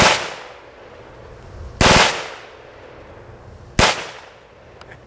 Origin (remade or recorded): recorded